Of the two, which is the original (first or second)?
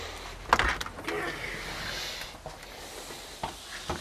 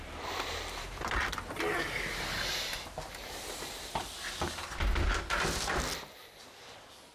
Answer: first